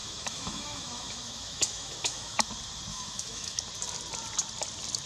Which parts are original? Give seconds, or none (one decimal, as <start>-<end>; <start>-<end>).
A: 2.5-2.9; 3.6-5.1